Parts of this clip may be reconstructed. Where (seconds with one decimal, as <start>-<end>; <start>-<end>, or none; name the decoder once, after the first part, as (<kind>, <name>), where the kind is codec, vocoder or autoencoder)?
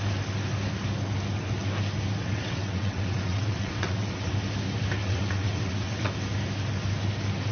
2.2-4.3 (vocoder, WaveNeXt); 5.0-6.1